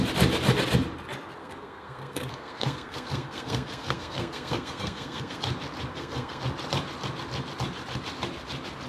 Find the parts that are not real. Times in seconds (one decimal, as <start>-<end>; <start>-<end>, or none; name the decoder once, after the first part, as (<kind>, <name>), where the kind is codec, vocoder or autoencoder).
1.4-5.4 (codec, SNAC); 5.9-6.4